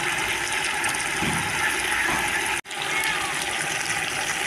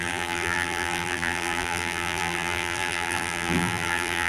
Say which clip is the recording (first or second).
first